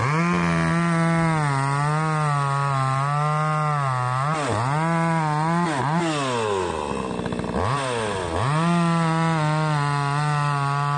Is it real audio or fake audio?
real